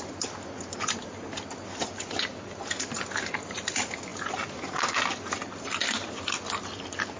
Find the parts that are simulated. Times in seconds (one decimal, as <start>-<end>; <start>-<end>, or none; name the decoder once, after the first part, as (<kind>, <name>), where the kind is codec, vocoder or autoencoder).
none